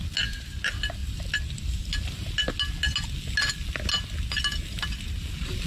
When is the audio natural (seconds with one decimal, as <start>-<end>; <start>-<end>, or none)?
0.0-5.7